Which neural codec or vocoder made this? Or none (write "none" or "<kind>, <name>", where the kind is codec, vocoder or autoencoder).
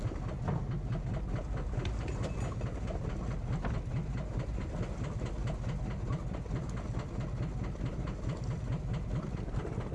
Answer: none